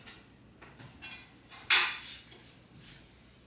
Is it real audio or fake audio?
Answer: real